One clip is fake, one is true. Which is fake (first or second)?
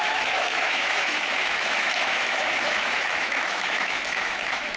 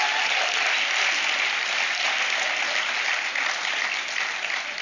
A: first